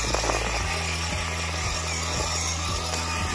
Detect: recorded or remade recorded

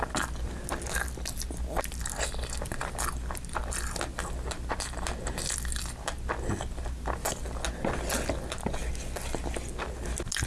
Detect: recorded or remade recorded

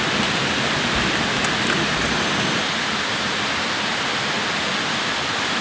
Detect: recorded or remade recorded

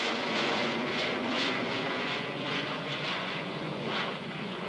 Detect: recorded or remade remade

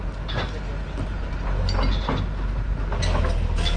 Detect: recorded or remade recorded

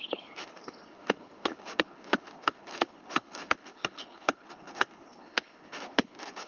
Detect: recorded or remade remade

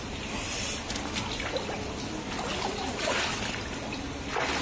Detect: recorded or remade recorded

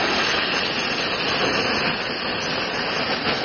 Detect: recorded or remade recorded